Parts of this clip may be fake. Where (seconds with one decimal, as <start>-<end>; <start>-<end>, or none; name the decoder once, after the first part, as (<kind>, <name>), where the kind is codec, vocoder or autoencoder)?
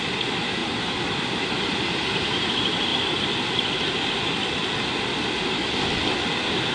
0.6-1.7 (vocoder, BigVGAN v2)